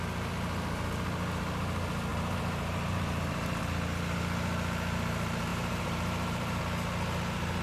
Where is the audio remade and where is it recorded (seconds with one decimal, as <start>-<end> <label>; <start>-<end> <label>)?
0.0-2.1 recorded; 2.1-3.6 remade; 3.6-5.5 recorded; 5.5-6.6 remade; 6.6-7.6 recorded